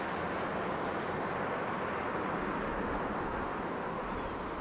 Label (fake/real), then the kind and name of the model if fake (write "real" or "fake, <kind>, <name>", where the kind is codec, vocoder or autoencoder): real